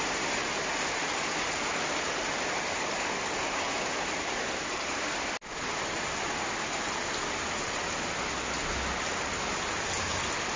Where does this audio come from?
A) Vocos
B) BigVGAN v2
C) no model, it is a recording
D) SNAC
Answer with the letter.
C